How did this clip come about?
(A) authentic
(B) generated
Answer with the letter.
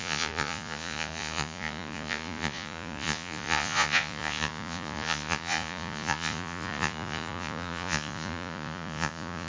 B